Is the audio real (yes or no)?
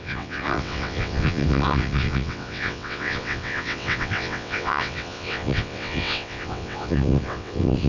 no